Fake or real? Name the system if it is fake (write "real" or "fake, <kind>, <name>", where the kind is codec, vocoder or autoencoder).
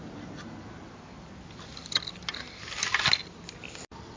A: real